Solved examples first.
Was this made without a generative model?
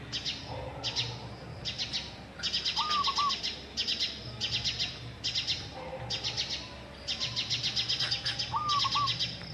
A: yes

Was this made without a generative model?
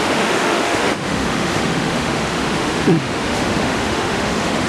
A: no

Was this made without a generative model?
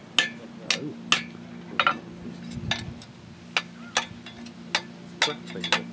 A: yes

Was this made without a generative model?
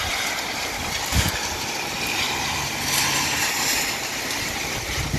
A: yes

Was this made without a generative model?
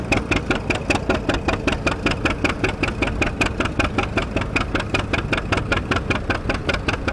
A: yes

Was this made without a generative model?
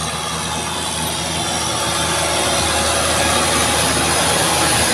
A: yes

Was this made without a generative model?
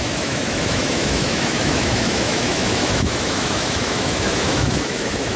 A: no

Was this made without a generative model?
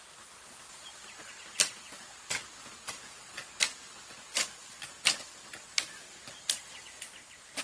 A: yes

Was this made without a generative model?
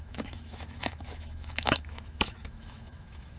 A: no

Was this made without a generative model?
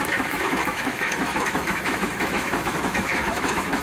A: no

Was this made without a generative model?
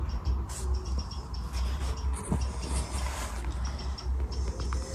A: yes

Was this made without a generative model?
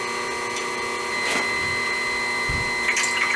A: yes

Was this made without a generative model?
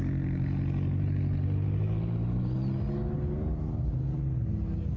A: yes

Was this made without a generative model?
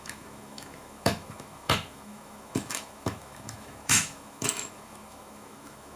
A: no